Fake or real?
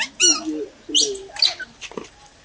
real